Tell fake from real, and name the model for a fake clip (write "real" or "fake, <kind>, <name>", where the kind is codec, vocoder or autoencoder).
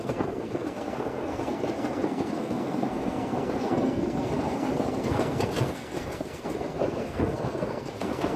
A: fake, codec, SNAC